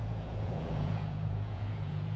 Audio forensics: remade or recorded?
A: remade